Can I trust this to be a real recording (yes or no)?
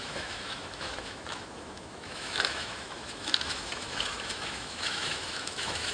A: no